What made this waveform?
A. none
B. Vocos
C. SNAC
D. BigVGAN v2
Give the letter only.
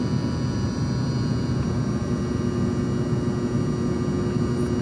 A